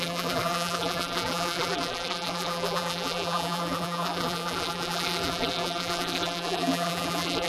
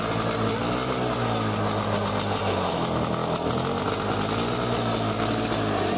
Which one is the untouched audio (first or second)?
second